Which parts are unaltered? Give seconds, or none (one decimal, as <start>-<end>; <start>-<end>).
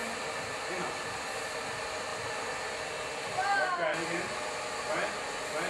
0.0-5.7